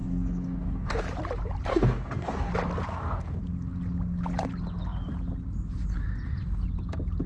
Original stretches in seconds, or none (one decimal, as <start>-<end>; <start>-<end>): 1.0-1.7; 2.5-2.9; 3.4-7.3